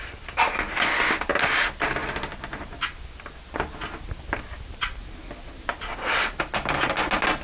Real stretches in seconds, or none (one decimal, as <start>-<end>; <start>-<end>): 0.0-7.4